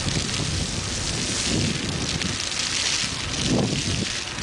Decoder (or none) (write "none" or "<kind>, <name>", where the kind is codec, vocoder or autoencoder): none